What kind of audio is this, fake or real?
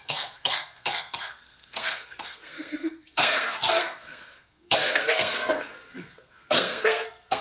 fake